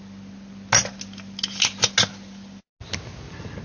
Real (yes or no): yes